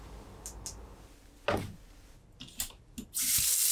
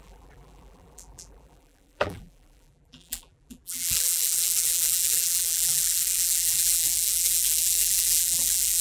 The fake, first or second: second